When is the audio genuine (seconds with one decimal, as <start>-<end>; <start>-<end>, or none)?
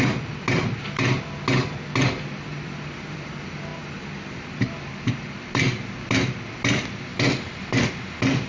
0.0-2.5; 3.3-3.7; 4.9-7.1; 7.9-8.5